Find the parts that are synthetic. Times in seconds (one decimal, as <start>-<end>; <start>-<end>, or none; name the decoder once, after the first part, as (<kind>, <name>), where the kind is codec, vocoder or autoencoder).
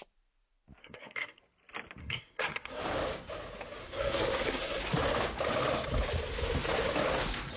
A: 0.8-1.4 (codec, SNAC); 2.0-2.8; 3.8-4.8